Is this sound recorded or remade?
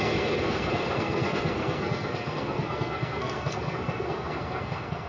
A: remade